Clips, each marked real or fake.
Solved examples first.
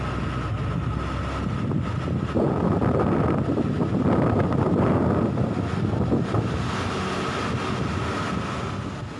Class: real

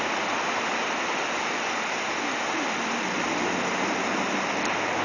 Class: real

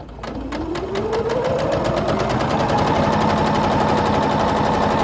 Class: real